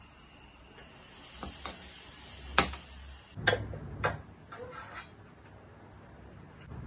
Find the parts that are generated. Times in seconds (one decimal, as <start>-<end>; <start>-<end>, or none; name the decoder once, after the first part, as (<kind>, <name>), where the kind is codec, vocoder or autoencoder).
none